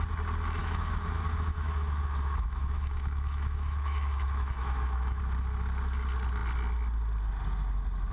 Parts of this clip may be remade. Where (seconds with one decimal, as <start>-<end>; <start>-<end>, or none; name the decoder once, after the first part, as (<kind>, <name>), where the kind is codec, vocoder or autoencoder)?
0.6-5.2 (autoencoder, DAC-VAE)